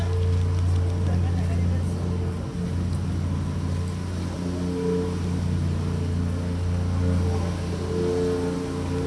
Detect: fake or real real